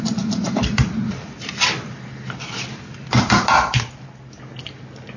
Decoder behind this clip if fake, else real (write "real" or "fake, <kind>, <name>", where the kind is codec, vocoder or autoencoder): real